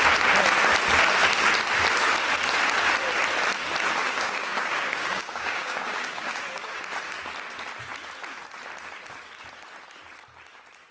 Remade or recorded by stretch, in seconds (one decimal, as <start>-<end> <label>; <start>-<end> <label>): 0.0-4.0 recorded; 4.0-6.8 remade; 6.8-10.9 recorded

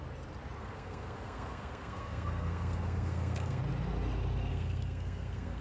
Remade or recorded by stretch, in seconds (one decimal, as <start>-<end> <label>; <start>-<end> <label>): 0.0-0.6 recorded; 0.6-3.6 remade; 3.6-4.5 recorded; 4.5-5.6 remade